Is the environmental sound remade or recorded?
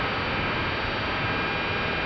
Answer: recorded